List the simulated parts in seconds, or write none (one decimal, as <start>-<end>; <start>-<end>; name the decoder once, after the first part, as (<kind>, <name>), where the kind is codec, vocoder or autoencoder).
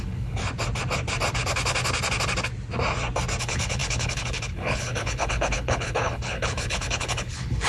0.0-0.4 (codec, HILCodec); 3.4-7.7